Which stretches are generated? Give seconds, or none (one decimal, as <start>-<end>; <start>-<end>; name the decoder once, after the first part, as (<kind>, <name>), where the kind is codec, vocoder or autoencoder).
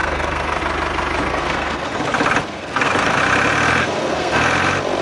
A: 0.0-0.6 (codec, SNAC); 1.3-2.0; 2.5-3.2; 3.8-4.4